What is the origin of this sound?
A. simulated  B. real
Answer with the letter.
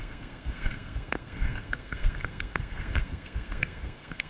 A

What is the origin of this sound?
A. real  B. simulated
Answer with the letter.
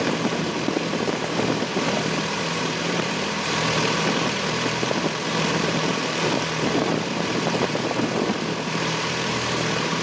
B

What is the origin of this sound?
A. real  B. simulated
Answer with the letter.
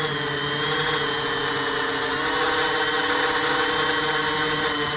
A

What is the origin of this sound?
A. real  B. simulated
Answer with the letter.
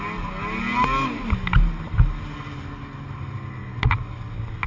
A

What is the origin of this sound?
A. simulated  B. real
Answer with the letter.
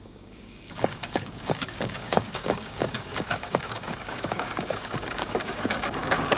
A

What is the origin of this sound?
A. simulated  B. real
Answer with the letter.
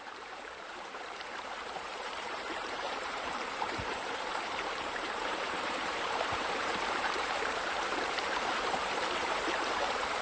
A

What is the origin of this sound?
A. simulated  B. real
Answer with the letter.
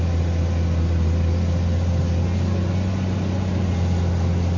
B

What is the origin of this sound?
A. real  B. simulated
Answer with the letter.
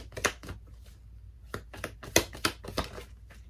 A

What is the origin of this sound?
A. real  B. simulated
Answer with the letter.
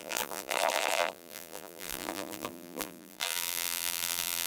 B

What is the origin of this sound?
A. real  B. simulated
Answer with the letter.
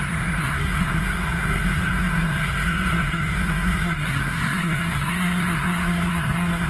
B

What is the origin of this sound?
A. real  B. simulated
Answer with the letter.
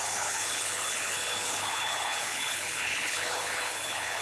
B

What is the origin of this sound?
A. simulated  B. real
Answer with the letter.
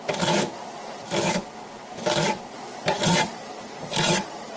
B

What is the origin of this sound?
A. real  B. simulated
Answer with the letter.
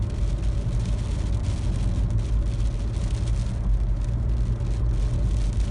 A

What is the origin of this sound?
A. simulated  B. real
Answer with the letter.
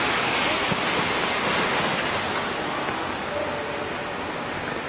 B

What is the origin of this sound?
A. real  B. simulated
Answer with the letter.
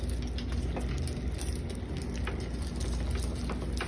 A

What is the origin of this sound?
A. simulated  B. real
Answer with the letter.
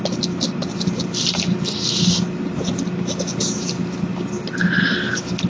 B